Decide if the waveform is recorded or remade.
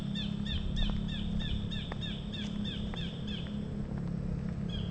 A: recorded